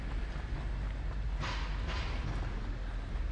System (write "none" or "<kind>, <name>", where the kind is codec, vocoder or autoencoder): none